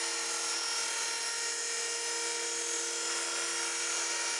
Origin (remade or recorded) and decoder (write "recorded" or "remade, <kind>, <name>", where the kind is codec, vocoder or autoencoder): recorded